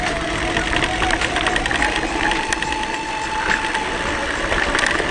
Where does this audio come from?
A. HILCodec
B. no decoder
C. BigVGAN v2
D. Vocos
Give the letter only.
C